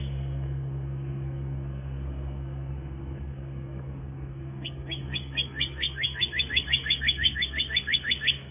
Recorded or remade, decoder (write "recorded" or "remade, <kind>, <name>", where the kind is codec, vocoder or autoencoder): remade, codec, SNAC